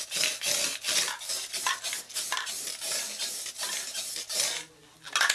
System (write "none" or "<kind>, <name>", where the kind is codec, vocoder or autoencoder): none